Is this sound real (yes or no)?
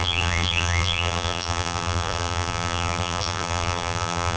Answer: no